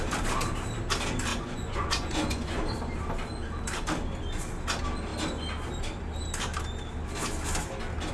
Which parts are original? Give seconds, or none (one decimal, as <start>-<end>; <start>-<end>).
0.0-1.3; 2.6-8.1